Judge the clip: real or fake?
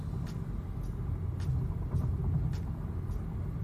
real